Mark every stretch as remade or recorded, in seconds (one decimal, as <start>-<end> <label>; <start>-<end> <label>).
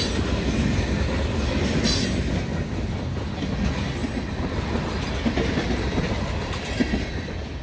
0.0-7.6 recorded